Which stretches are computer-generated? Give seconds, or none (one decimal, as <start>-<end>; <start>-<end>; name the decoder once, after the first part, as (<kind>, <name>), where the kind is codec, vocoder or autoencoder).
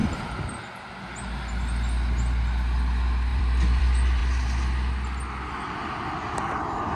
3.3-3.8 (vocoder, BigVGAN v2)